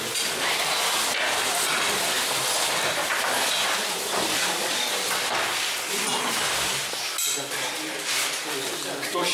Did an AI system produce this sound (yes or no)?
yes